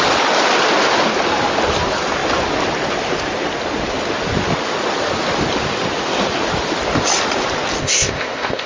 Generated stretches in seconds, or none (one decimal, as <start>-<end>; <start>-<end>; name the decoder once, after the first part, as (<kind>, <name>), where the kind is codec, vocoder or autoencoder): 7.8-8.7 (codec, ZipCodec)